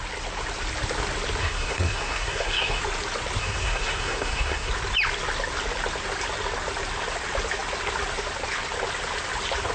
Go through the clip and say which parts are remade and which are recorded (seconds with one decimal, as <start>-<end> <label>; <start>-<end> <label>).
0.0-1.4 recorded; 1.4-2.8 remade; 2.8-3.4 recorded; 3.4-4.7 remade; 4.7-9.7 recorded